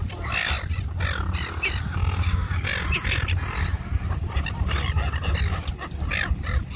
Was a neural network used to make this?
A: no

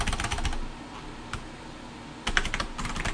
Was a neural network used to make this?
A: no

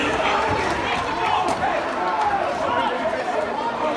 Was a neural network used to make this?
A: yes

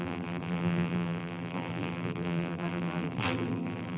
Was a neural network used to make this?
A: yes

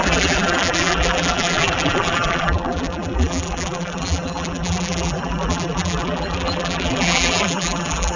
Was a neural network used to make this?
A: yes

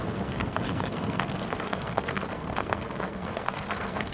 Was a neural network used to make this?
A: yes